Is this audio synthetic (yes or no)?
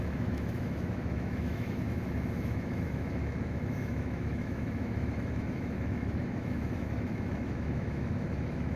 yes